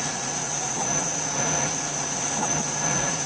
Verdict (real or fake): fake